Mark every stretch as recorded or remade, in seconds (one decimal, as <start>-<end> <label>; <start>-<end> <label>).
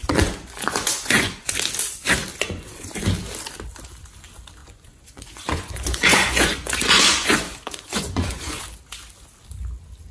0.0-1.5 remade; 1.5-2.3 recorded; 2.3-2.8 remade; 2.8-4.6 recorded; 4.6-8.6 remade; 8.6-10.1 recorded